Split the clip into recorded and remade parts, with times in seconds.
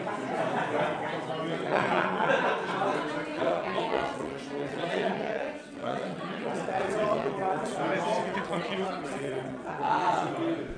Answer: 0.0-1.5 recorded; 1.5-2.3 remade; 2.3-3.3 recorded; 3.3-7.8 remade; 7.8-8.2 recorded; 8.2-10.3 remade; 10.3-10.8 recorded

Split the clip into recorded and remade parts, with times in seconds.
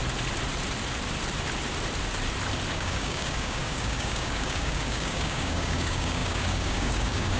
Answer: 0.0-2.7 recorded; 2.7-7.4 remade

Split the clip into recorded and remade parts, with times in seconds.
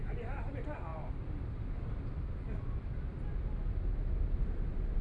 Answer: 0.0-5.0 recorded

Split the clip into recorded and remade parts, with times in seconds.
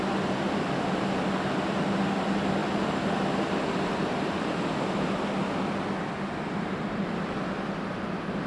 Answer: 0.0-8.5 recorded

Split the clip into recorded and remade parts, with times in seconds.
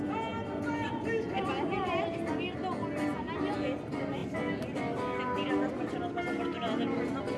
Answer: 0.0-7.4 recorded